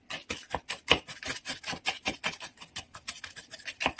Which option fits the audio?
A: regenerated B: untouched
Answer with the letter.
B